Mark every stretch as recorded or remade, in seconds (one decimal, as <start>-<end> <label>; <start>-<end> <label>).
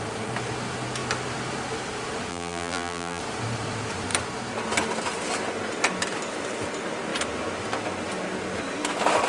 0.0-2.3 recorded; 2.3-3.2 remade; 3.2-9.3 recorded